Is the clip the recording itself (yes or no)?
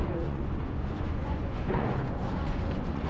no